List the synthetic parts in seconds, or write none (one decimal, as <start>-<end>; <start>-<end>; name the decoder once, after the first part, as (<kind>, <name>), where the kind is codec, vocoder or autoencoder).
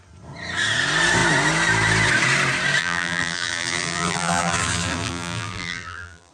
2.8-6.3 (vocoder, BigVGAN v2)